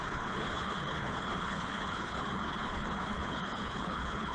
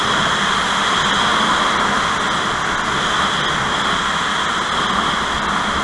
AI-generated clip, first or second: first